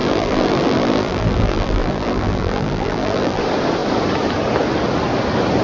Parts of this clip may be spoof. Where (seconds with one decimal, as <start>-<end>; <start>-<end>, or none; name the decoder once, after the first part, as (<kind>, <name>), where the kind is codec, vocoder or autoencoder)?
0.0-3.4 (vocoder, BigVGAN v2)